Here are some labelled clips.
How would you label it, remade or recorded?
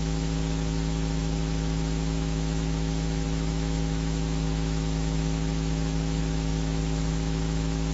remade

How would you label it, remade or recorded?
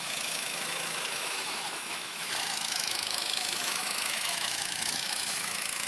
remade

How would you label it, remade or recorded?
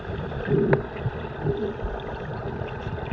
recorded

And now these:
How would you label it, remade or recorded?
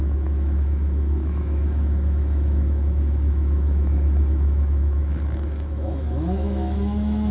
remade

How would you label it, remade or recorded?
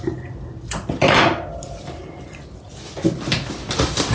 recorded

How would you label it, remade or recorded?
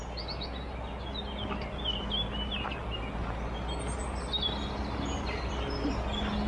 recorded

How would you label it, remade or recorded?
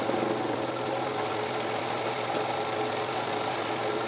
recorded